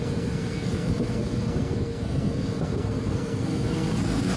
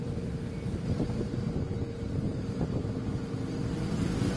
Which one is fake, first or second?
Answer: first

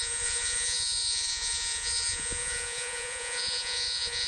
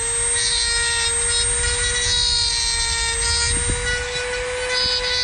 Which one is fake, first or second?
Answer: first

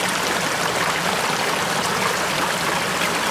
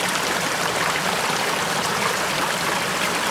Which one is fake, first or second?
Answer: second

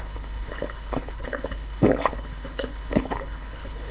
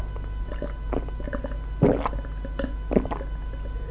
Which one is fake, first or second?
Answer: first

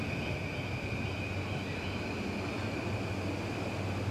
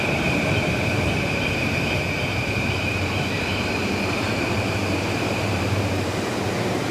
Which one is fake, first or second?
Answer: second